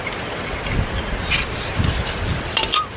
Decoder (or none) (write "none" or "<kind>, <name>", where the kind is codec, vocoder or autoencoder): none